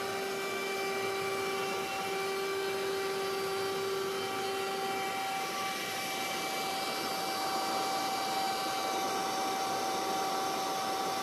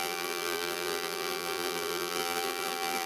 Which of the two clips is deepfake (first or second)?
second